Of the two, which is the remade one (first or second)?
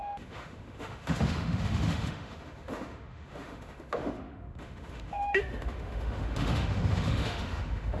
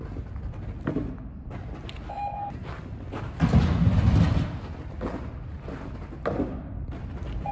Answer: first